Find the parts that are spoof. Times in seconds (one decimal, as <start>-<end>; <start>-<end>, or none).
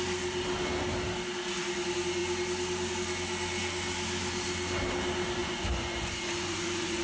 5.4-7.0